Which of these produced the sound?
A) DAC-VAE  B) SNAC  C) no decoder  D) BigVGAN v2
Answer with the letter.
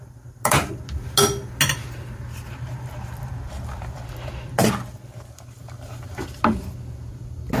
C